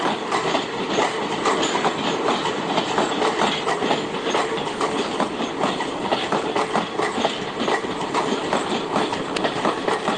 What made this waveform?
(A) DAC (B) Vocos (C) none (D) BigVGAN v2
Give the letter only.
D